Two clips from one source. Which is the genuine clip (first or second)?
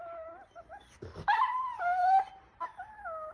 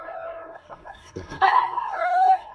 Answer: first